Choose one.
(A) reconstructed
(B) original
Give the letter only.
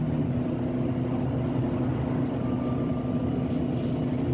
B